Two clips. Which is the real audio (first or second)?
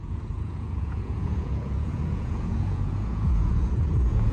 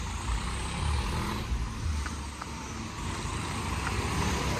second